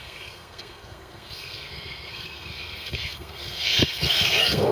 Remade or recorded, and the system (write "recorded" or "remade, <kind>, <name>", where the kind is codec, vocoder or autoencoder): remade, codec, SNAC